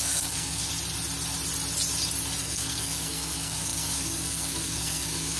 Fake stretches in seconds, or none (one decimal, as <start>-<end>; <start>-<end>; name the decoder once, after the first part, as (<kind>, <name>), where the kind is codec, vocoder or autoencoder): 0.0-0.7 (codec, SNAC); 2.4-5.4